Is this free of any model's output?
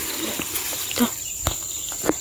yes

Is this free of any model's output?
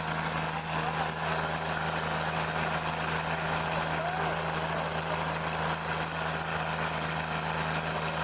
yes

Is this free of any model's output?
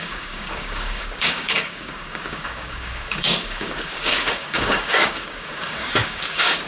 no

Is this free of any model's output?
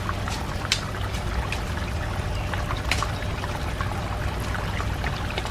yes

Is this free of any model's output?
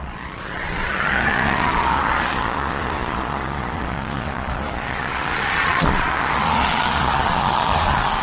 no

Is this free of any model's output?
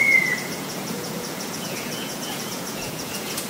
no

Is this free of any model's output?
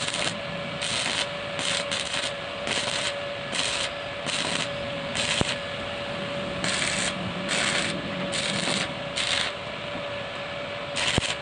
yes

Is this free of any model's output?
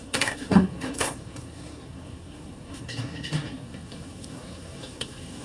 no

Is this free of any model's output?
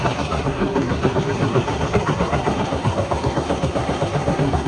no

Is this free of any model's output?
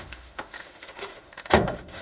no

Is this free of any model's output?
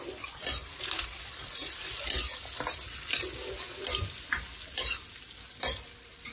yes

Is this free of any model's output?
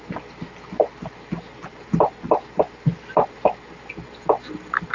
yes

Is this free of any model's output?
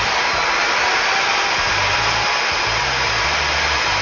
yes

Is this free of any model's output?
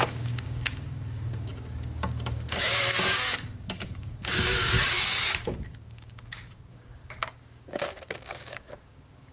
no